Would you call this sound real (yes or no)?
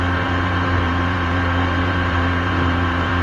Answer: no